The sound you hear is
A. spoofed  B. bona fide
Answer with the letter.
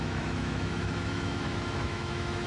A